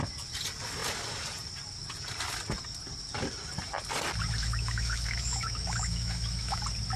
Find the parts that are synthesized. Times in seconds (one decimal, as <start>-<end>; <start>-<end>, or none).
4.4-6.6